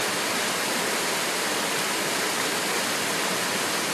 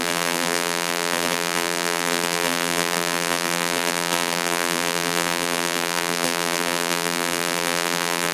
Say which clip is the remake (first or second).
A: second